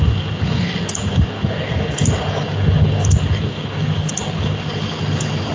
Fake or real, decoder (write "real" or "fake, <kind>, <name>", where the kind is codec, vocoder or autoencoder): real